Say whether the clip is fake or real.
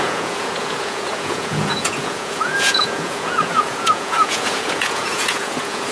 fake